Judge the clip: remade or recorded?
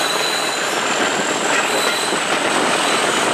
recorded